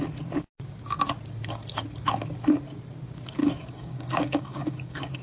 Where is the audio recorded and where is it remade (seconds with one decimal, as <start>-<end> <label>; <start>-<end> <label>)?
0.0-3.4 recorded; 3.4-5.2 remade